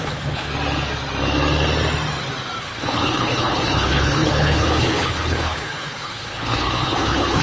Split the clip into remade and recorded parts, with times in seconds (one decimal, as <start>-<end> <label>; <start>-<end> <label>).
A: 0.0-0.5 remade; 0.5-2.6 recorded; 2.6-7.4 remade